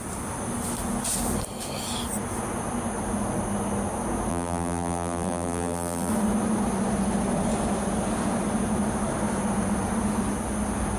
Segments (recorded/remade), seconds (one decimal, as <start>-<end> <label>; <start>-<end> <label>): 0.0-4.3 recorded; 4.3-6.1 remade; 6.1-11.0 recorded